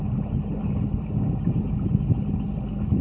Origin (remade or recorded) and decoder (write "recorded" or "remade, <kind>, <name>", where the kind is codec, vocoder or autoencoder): recorded